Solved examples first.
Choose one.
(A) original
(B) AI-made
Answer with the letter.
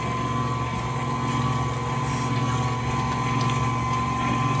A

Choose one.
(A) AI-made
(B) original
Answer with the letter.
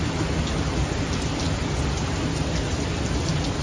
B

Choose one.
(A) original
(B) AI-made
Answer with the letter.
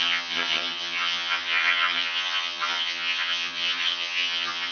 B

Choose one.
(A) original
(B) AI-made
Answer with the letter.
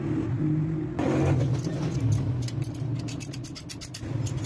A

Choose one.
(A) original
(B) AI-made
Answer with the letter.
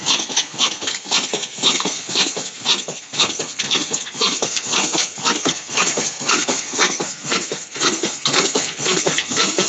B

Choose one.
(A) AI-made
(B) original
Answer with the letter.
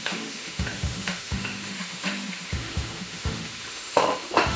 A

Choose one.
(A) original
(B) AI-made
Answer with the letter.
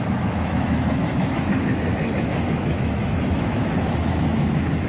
B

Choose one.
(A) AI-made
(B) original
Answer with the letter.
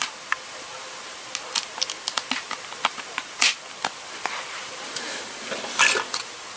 B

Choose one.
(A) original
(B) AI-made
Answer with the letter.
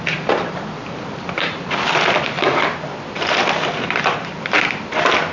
A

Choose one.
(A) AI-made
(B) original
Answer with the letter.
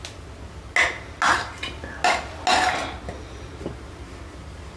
B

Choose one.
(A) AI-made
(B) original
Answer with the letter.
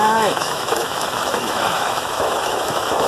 A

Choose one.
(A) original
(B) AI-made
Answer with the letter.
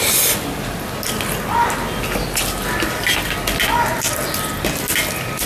A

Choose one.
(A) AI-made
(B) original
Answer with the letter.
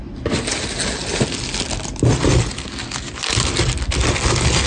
B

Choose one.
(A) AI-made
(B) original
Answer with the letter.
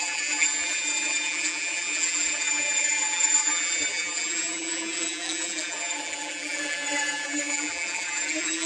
A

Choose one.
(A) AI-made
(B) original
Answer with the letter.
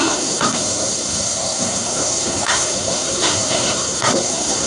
A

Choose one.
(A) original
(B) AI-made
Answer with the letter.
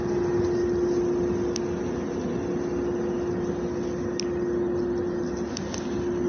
A